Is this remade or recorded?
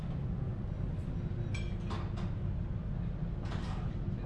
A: recorded